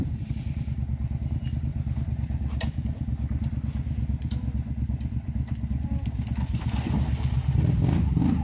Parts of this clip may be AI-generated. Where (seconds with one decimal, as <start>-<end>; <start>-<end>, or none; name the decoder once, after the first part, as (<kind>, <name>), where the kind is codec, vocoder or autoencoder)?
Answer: none